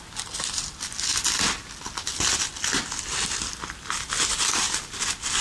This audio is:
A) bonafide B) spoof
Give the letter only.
A